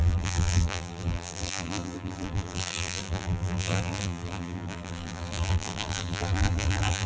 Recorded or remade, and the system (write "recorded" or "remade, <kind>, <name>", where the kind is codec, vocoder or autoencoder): remade, vocoder, BigVGAN v2